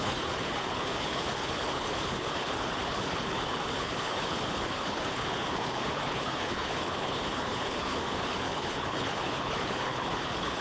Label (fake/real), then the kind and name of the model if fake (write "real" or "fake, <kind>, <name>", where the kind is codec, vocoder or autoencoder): fake, codec, HILCodec